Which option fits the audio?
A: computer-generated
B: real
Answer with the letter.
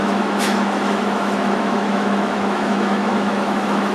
A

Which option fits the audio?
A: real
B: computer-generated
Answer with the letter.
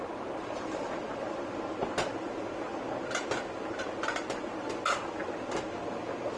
A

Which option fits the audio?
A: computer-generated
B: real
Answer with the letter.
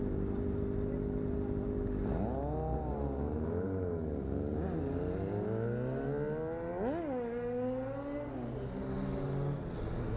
B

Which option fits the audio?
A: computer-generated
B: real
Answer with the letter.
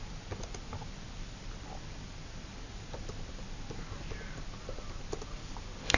B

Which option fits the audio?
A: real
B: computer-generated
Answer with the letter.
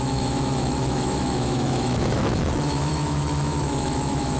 B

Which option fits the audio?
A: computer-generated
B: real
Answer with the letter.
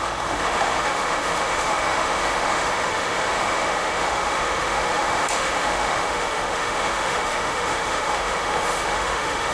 A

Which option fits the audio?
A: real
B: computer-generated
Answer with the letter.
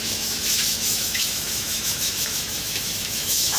B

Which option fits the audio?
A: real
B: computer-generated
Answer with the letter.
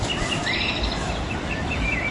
A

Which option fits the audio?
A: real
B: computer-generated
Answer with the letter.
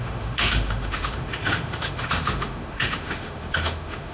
B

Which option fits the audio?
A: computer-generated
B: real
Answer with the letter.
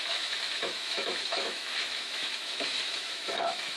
A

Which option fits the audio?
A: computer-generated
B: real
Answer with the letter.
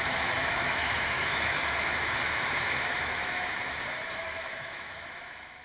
A